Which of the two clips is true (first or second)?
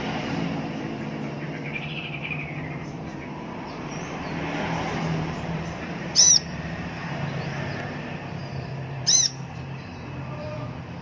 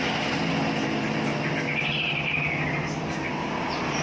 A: second